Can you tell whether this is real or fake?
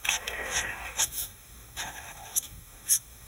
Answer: fake